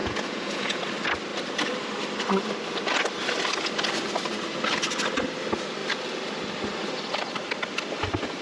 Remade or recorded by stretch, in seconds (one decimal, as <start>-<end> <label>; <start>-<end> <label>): 0.0-0.8 remade; 0.8-8.4 recorded